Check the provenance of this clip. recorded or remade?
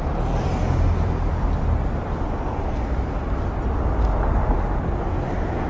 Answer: recorded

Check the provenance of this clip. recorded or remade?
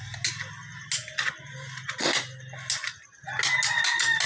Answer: recorded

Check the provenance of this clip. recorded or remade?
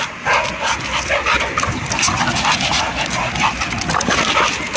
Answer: recorded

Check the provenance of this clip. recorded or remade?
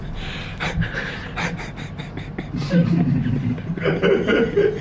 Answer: recorded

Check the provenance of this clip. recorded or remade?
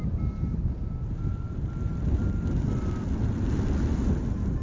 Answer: recorded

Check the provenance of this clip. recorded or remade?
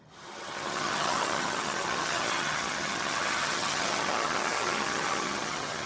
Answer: remade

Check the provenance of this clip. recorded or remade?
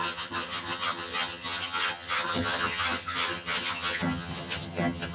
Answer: remade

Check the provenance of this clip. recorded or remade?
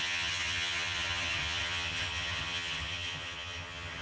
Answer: remade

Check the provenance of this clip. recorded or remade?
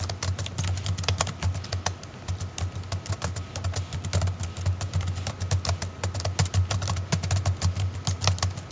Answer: recorded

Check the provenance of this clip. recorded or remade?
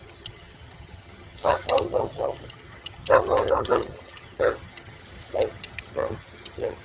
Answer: remade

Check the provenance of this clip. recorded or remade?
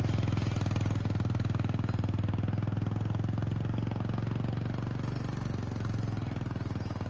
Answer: recorded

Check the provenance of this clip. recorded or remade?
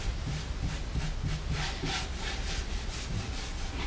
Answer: recorded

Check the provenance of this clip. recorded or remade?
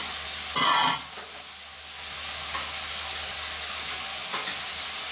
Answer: recorded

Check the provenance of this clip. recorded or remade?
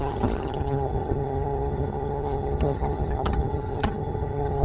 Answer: remade